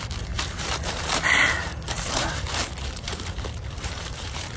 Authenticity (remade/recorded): remade